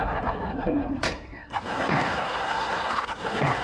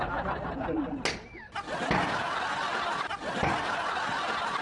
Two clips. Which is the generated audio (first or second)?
first